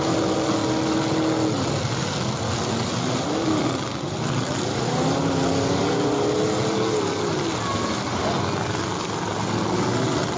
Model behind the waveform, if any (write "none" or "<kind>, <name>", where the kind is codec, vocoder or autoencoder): none